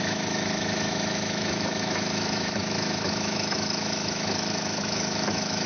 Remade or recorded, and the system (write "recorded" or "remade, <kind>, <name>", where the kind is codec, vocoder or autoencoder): remade, autoencoder, DAC-VAE